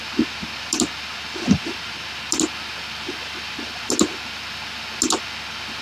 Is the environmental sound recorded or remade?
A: recorded